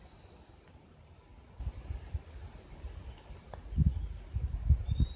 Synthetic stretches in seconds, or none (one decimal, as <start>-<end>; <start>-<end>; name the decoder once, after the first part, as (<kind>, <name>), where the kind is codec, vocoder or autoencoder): none